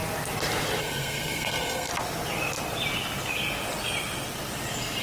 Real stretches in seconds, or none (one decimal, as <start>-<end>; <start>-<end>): 0.0-0.8; 1.9-5.0